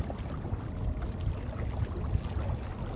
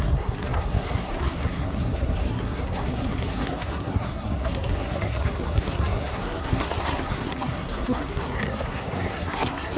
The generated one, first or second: second